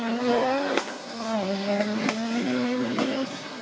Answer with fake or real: fake